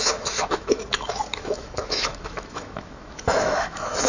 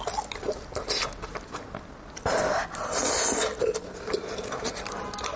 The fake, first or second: first